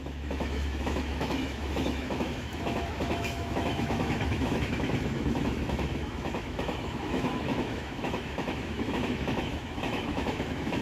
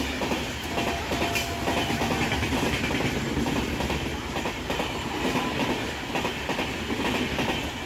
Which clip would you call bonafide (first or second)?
second